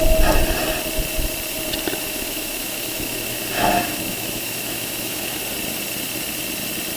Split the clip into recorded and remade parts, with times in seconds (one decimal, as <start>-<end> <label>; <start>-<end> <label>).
0.0-2.1 recorded; 2.1-5.4 remade; 5.4-7.0 recorded